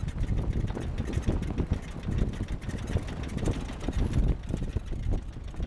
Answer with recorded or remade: recorded